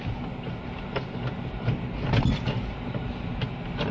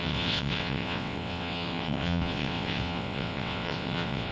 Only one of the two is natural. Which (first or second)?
first